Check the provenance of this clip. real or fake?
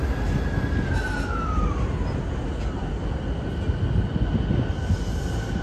real